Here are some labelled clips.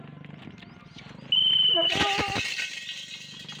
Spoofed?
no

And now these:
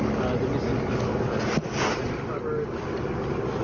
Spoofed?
no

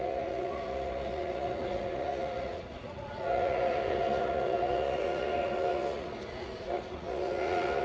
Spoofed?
yes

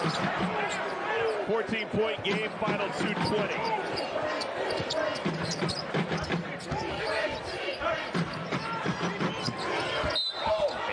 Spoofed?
no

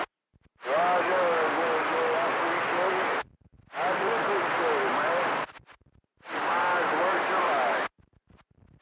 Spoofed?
no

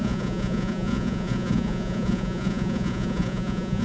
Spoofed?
yes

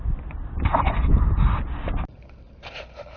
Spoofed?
no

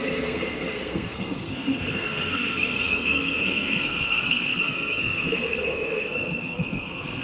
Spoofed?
yes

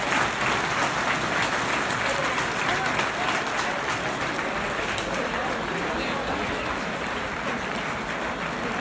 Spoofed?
no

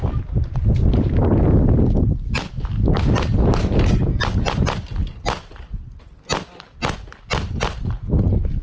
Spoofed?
no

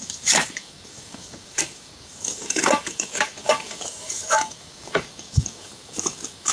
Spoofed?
yes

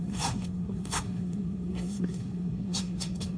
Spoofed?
yes